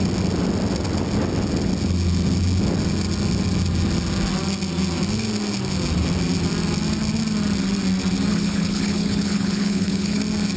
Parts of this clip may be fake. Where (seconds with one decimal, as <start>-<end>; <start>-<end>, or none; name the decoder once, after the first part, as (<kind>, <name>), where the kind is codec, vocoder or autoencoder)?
8.3-10.2 (codec, HILCodec)

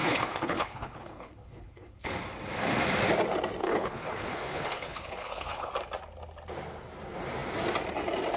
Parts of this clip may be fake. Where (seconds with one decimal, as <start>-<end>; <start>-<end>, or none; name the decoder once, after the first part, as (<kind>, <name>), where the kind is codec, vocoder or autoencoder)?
0.0-2.1 (codec, HILCodec); 3.6-5.7

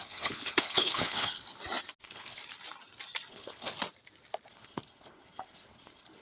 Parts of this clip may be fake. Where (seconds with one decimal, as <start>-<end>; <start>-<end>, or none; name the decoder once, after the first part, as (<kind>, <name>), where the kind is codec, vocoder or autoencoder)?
0.0-1.4 (codec, HILCodec); 2.0-2.4; 3.3-3.7; 4.5-6.2

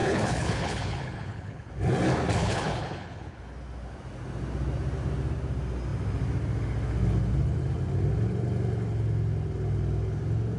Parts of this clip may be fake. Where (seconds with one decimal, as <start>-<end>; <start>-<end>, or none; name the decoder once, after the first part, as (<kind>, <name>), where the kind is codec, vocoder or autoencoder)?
0.0-1.7 (codec, HILCodec); 2.4-3.4